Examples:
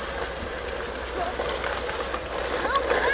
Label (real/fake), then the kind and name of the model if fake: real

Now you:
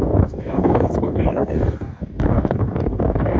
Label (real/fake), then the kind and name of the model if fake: fake, codec, DAC